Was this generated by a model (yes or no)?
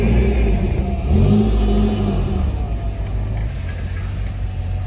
no